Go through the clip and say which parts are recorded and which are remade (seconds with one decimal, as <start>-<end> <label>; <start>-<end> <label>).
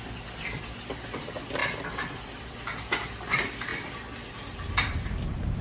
0.0-5.6 recorded